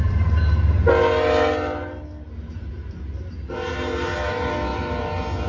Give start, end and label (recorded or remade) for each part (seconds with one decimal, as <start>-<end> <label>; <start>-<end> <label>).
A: 0.0-5.5 recorded